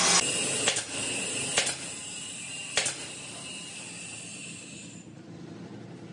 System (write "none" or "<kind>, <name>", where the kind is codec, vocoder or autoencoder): none